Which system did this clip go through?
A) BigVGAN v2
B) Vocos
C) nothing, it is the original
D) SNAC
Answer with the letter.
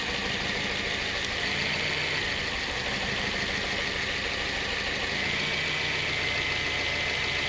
C